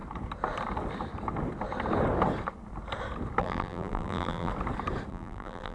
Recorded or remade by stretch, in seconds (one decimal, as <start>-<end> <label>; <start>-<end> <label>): 0.0-3.4 recorded; 3.4-4.5 remade; 4.5-5.1 recorded; 5.1-5.7 remade